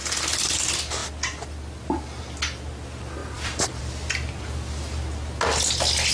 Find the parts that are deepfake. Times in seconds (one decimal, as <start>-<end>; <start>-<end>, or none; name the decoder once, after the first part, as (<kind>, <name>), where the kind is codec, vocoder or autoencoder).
3.2-3.8 (vocoder, BigVGAN v2)